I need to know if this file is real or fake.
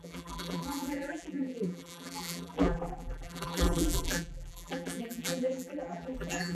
fake